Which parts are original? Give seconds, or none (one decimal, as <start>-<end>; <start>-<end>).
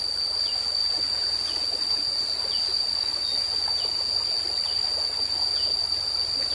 0.0-6.5